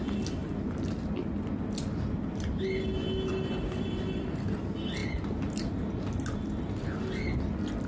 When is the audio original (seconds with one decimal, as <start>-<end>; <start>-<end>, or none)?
0.0-7.9